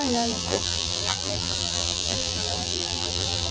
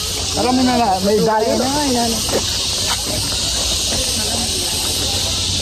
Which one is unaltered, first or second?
second